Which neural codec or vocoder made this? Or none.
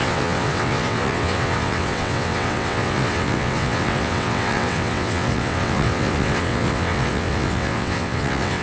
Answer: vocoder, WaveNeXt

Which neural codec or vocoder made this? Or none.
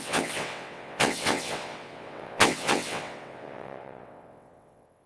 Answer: vocoder, WaveNeXt